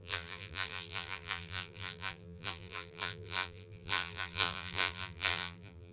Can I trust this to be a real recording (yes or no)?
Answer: no